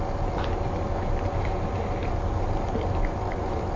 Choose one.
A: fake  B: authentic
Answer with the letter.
B